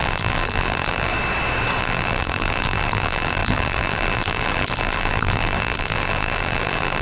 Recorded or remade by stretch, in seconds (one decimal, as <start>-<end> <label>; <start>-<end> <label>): 0.0-1.1 remade; 1.1-1.8 recorded; 1.8-7.0 remade